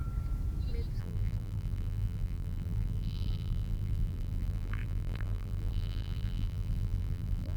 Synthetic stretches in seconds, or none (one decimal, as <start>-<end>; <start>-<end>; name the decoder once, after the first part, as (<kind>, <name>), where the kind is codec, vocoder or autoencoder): 1.0-7.6 (vocoder, BigVGAN v2)